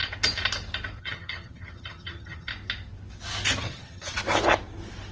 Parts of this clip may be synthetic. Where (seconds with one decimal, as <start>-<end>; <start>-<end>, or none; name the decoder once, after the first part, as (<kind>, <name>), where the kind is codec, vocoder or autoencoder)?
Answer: 1.0-2.5 (vocoder, HiFi-GAN); 3.6-4.2